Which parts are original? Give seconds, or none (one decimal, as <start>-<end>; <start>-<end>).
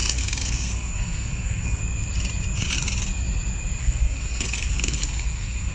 1.8-3.8